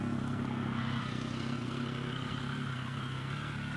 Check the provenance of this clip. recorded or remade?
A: remade